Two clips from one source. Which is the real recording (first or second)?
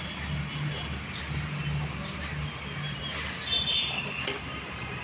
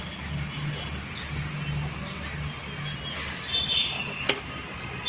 second